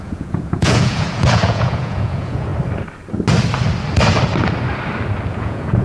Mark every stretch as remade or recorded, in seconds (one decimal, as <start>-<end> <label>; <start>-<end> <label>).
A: 0.0-2.5 remade; 2.5-5.3 recorded; 5.3-5.8 remade